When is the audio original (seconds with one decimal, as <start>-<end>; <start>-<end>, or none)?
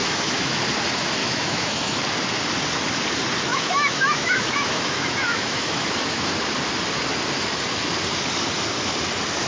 0.6-1.2; 2.0-3.5; 6.4-9.5